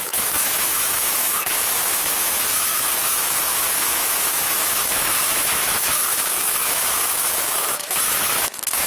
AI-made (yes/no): yes